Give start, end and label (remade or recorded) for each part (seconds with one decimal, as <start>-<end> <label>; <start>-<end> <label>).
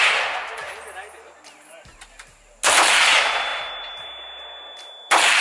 0.0-5.4 recorded